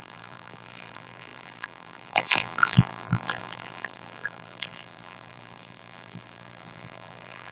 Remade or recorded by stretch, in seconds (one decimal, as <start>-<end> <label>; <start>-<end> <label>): 0.0-7.5 remade